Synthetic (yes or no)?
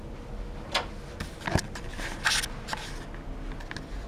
no